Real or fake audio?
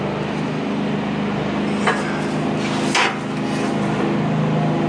real